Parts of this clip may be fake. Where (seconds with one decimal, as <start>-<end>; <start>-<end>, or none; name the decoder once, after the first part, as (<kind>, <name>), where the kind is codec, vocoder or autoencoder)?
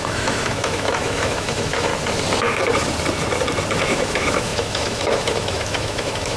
0.0-1.9 (autoencoder, DAC-VAE); 3.8-6.4